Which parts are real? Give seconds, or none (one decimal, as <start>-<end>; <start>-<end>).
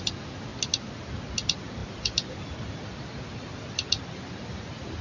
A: 0.0-5.0